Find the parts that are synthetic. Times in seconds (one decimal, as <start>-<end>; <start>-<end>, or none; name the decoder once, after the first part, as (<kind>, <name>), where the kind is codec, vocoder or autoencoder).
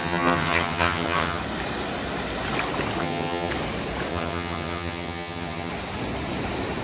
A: 0.0-1.4 (vocoder, HiFi-GAN); 3.0-3.5; 4.1-5.7